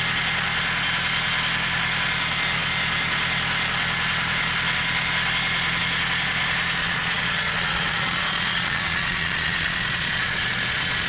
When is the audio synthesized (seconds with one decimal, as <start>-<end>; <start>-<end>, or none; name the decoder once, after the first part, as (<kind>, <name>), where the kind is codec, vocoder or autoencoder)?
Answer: 6.8-11.1 (vocoder, Vocos)